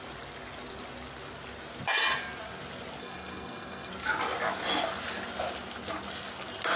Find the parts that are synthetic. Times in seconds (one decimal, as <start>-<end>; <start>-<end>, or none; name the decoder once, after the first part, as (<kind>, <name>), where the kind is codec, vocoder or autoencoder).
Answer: 3.0-3.9 (codec, SNAC)